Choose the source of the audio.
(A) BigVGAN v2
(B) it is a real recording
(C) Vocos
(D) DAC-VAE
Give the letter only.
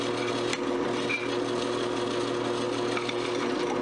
B